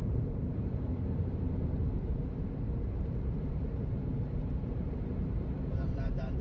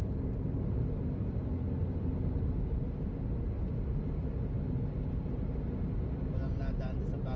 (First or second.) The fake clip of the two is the first